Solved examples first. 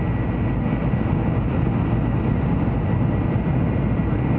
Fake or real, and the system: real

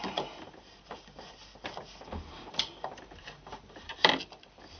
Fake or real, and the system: fake, vocoder, BigVGAN v2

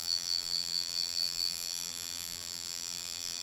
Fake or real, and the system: fake, vocoder, BigVGAN v2